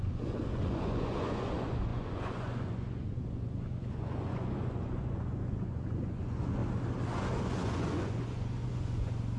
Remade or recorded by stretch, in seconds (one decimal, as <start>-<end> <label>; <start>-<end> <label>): 0.0-6.6 remade; 6.6-7.1 recorded; 7.1-9.4 remade